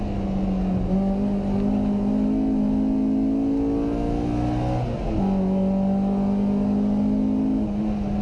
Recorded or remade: recorded